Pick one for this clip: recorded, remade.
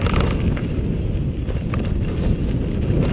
recorded